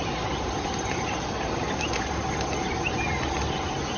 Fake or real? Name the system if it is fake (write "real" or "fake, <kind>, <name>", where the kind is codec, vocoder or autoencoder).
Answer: real